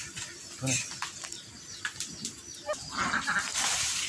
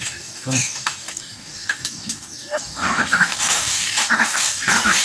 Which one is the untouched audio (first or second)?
first